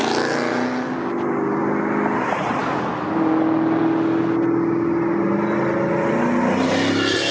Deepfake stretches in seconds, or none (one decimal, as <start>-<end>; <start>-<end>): none